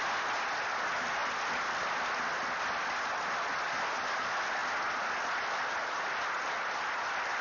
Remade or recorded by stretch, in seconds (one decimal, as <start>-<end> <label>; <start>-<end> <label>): 0.0-7.4 recorded